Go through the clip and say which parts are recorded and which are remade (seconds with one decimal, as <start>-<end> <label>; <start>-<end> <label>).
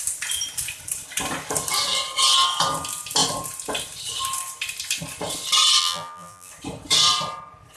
0.0-5.8 recorded; 5.8-6.5 remade; 6.5-7.8 recorded